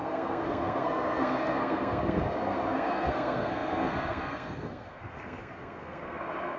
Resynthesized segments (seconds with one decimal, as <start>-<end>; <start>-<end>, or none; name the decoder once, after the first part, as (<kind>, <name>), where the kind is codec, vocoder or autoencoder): 0.0-6.6 (codec, SNAC)